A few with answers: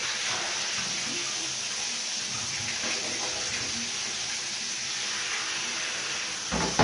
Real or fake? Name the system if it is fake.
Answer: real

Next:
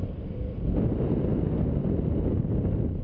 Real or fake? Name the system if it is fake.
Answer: real